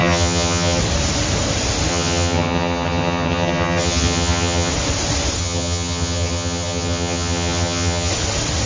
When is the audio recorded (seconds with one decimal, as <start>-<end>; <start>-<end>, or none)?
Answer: 0.8-1.9; 4.7-5.4; 8.1-8.7